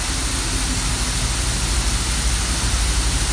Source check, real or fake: real